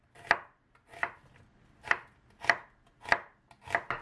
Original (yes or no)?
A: yes